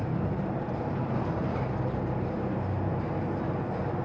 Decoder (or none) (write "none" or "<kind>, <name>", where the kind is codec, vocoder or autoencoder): none